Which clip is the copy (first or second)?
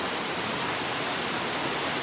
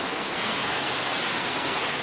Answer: second